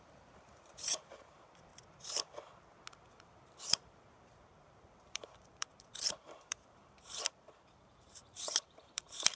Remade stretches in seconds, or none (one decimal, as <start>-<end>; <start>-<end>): 0.0-1.7; 3.1-9.4